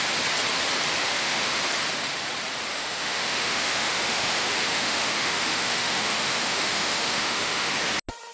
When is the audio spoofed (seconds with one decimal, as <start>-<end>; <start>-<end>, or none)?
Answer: 1.1-1.6; 2.7-7.7